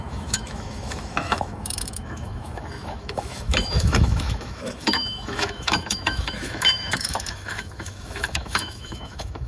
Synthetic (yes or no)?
yes